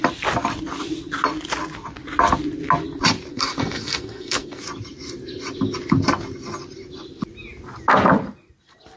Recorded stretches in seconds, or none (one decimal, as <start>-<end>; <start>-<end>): 0.0-3.3; 4.6-9.0